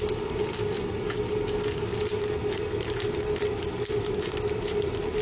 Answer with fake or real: real